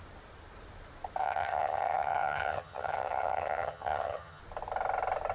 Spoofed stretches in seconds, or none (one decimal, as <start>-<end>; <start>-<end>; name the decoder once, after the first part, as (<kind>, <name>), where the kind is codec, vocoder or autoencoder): 1.2-4.4 (vocoder, HiFi-GAN)